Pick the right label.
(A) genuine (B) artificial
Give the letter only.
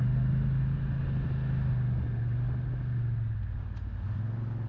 A